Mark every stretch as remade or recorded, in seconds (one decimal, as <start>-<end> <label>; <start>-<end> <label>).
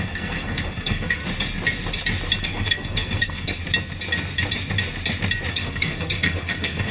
0.0-1.2 remade; 1.2-2.4 recorded; 2.4-3.6 remade; 3.6-5.5 recorded; 5.5-6.9 remade